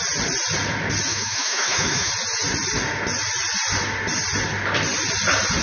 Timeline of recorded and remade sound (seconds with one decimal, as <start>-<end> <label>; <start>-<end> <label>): 0.0-1.1 recorded; 1.1-2.1 remade; 2.1-5.6 recorded